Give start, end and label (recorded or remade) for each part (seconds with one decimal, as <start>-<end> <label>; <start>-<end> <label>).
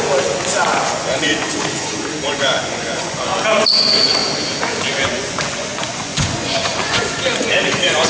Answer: 0.0-3.3 remade; 3.3-3.8 recorded; 3.8-4.2 remade; 4.2-5.1 recorded; 5.1-8.1 remade